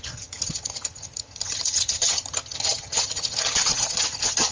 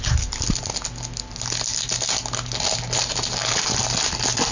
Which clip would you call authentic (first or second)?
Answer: second